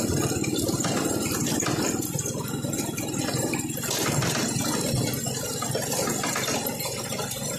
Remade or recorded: recorded